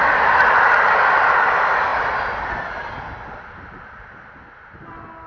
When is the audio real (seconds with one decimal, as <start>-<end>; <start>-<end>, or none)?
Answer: 0.0-5.3